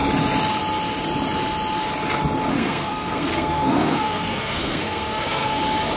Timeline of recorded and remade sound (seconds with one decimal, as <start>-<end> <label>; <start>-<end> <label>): 0.0-2.6 recorded; 2.6-5.6 remade; 5.6-6.0 recorded